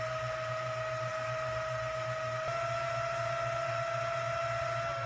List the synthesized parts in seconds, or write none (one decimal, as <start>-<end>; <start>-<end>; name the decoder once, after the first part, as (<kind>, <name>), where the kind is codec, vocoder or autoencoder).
none

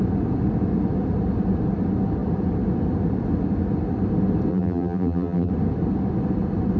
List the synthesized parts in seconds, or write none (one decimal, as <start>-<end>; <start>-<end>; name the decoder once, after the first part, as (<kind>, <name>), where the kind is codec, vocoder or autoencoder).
4.5-5.5 (vocoder, BigVGAN v2)

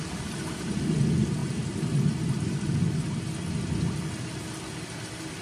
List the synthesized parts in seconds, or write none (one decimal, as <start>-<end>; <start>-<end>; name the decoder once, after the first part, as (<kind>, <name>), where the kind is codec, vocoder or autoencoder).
none

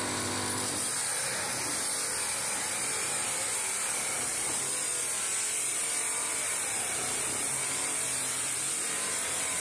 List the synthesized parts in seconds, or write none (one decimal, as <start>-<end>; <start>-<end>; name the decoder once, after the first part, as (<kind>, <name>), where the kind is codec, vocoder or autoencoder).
0.0-1.0 (vocoder, BigVGAN v2); 2.6-3.2; 4.2-4.9; 5.7-9.6

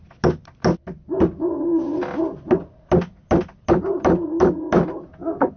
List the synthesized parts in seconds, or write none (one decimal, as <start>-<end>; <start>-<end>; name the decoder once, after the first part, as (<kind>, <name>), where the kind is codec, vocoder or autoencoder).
none

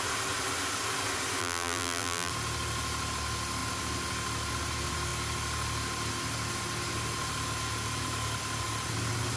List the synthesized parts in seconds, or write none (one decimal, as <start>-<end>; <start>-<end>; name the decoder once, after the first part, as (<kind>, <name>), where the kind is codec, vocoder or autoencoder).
1.4-2.3 (vocoder, BigVGAN v2)